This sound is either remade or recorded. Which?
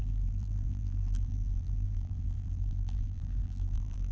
remade